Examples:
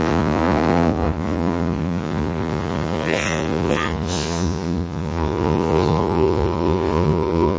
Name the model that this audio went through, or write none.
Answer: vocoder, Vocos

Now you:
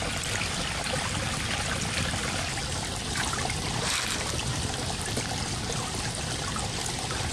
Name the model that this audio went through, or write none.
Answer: none